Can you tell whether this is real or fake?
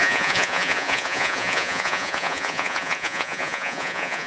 fake